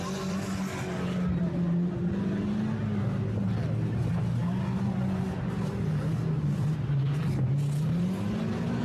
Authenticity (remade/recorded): recorded